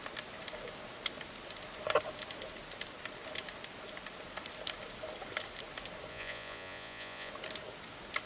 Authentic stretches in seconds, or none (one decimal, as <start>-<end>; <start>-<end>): 0.0-6.1; 7.3-8.3